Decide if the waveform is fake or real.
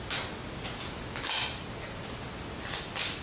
real